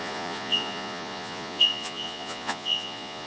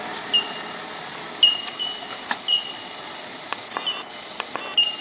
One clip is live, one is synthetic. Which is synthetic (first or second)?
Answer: first